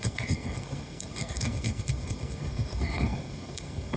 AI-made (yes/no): yes